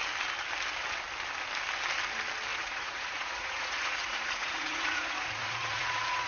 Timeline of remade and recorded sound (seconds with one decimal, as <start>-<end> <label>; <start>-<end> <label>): 0.0-2.5 recorded; 2.5-6.3 remade